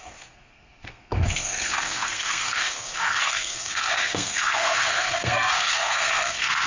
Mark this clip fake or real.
fake